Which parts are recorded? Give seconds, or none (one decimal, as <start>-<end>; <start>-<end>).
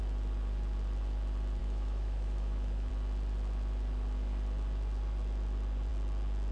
0.0-1.6; 2.9-6.5